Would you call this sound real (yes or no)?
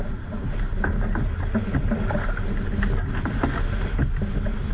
yes